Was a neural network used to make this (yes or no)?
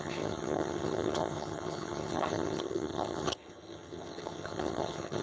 yes